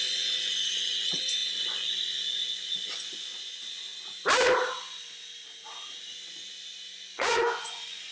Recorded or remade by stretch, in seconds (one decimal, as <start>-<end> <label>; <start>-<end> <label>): 0.0-3.9 remade; 3.9-6.1 recorded; 6.1-8.1 remade